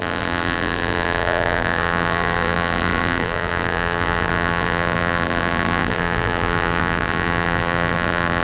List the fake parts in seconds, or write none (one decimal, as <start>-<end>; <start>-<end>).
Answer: 0.0-8.4